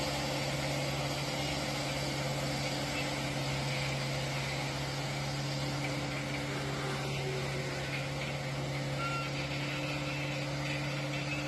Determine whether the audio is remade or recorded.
recorded